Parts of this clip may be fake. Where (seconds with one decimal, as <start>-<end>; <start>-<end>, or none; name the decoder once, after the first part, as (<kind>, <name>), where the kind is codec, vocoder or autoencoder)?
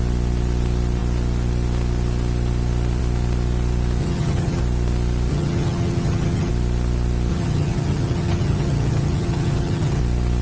4.0-4.6 (vocoder, HiFi-GAN); 5.3-6.5; 7.3-10.0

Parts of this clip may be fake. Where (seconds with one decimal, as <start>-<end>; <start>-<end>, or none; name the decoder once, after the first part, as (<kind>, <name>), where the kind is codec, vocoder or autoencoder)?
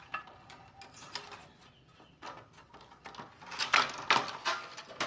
none